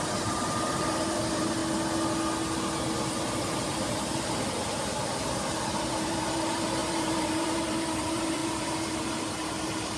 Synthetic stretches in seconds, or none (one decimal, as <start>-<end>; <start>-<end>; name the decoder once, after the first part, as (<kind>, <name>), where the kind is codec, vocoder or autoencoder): 0.0-1.6 (vocoder, BigVGAN v2); 3.1-4.6; 5.9-10.0